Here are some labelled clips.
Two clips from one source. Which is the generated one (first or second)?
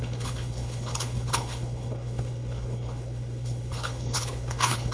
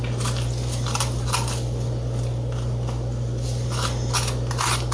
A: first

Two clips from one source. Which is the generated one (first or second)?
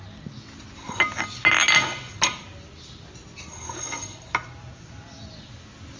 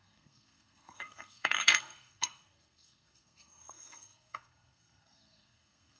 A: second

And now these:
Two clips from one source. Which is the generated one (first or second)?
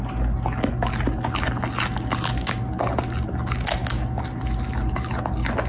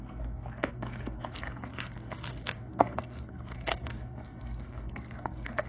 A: second